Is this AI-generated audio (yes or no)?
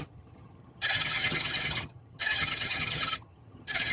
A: yes